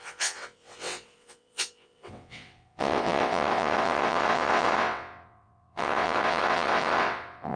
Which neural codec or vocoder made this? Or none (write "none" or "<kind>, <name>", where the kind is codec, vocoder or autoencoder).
vocoder, WaveNeXt